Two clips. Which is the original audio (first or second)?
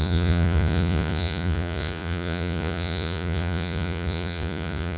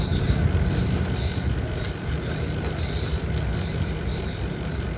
second